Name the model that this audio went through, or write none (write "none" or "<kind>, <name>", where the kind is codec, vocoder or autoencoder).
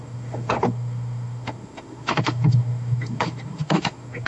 autoencoder, DAC-VAE